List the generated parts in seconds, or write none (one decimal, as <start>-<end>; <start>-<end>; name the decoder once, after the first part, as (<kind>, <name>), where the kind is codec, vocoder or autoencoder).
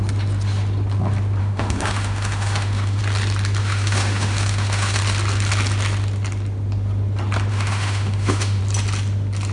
1.4-3.0 (autoencoder, DAC-VAE); 3.6-5.0; 7.5-8.6